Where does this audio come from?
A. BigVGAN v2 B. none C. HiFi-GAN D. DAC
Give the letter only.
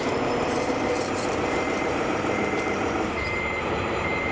A